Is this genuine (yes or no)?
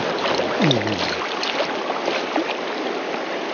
yes